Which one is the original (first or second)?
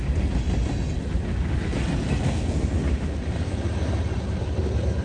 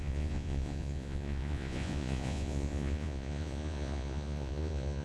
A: first